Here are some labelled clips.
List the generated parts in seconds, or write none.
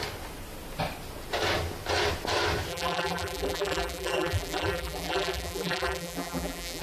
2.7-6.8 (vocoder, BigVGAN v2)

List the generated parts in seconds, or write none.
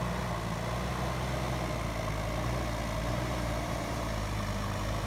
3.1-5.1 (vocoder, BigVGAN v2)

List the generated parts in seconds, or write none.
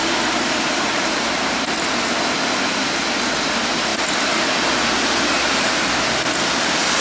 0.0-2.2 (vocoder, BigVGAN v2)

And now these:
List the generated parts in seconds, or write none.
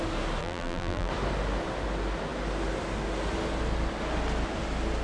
0.4-1.1 (vocoder, BigVGAN v2)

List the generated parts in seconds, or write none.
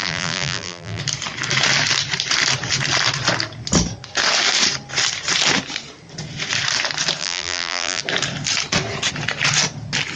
0.0-1.0 (vocoder, BigVGAN v2); 7.2-8.0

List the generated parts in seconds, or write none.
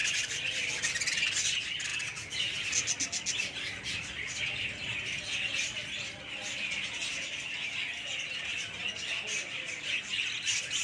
0.0-0.9 (vocoder, BigVGAN v2)